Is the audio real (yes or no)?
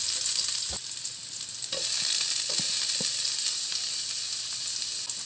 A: yes